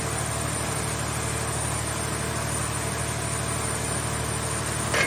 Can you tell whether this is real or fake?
real